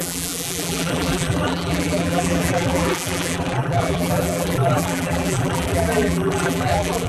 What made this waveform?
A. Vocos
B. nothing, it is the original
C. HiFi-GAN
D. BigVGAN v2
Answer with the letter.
D